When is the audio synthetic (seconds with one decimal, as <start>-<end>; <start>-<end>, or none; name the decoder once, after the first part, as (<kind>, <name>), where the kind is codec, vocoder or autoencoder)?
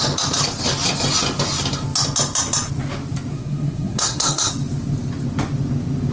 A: 3.3-4.5 (codec, SNAC)